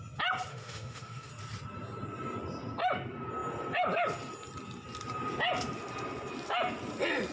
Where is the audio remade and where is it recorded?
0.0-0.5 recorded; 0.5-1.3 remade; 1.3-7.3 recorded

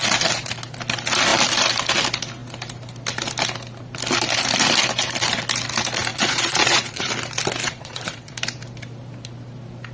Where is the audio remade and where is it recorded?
0.0-6.1 recorded; 6.1-7.1 remade; 7.1-7.6 recorded; 7.6-8.4 remade; 8.4-9.9 recorded

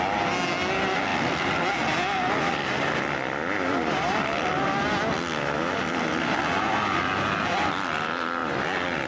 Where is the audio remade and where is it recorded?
0.0-9.1 recorded

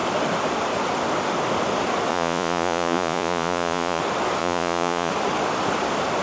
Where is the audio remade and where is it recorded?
0.0-2.1 recorded; 2.1-4.0 remade; 4.0-4.4 recorded; 4.4-5.1 remade; 5.1-6.2 recorded